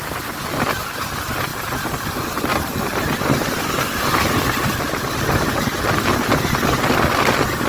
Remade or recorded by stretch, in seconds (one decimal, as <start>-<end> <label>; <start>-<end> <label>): 0.0-7.7 recorded